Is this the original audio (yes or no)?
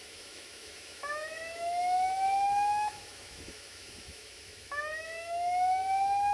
no